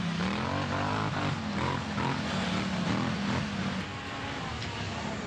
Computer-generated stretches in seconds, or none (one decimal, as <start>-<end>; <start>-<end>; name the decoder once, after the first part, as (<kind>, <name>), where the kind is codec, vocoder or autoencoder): none